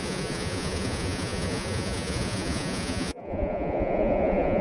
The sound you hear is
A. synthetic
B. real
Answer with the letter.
A